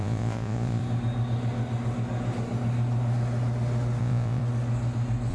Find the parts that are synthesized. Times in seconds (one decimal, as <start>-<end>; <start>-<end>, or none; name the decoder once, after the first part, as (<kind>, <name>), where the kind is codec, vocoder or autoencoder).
0.0-0.8 (vocoder, Vocos); 4.0-4.4